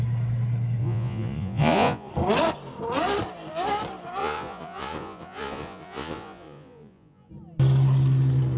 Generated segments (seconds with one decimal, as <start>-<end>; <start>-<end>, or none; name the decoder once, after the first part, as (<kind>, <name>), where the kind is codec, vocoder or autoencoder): 0.8-2.1 (vocoder, Vocos); 4.2-7.3